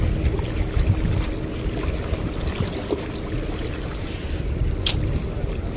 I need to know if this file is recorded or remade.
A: recorded